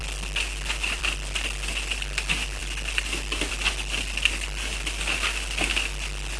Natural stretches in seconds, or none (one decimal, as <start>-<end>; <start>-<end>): 0.0-6.4